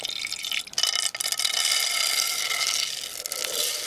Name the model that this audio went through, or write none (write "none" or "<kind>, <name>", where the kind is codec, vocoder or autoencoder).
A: none